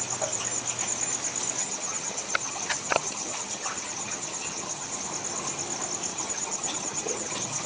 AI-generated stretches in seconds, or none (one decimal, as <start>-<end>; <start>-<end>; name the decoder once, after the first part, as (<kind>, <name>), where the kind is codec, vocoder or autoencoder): 1.6-5.1 (vocoder, HiFi-GAN); 6.1-7.7